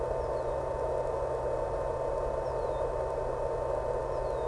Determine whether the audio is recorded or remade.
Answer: recorded